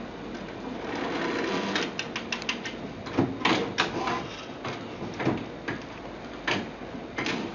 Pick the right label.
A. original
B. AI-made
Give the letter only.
A